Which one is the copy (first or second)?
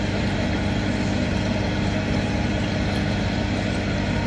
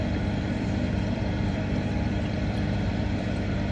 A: second